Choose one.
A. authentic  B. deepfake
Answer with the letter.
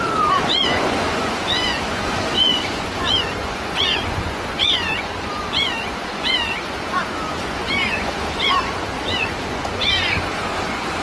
B